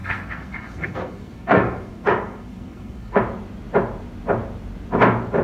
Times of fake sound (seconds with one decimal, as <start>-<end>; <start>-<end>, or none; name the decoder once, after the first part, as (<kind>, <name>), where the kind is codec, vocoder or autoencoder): 0.0-3.2 (codec, SNAC)